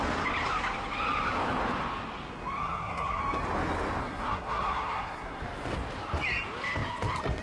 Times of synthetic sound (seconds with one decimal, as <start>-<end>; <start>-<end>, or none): 2.6-3.2; 4.0-5.4